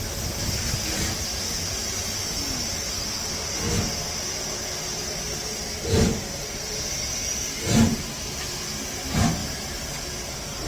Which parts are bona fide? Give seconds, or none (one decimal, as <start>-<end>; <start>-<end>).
0.0-10.7